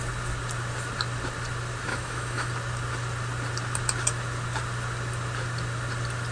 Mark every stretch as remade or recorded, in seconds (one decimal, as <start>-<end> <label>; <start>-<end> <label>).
0.0-1.9 recorded; 1.9-2.5 remade; 2.5-6.3 recorded